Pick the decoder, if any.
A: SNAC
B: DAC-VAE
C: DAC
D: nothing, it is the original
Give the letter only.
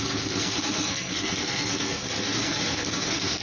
A